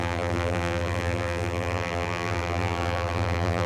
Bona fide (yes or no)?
no